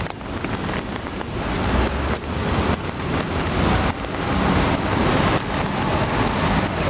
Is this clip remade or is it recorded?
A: recorded